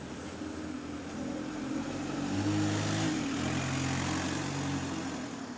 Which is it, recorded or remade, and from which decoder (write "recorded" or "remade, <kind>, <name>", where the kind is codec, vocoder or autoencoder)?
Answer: recorded